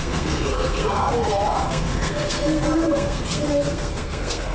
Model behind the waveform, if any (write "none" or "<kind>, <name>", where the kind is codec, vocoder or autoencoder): codec, SNAC